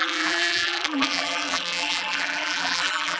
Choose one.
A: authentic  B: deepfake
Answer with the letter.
B